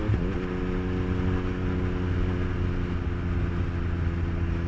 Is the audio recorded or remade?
recorded